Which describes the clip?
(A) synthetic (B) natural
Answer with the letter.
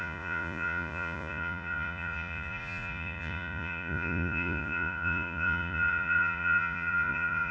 A